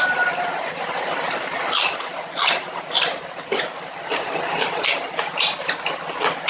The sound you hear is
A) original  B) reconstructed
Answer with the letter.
A